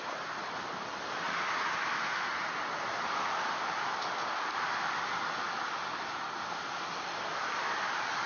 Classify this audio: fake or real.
real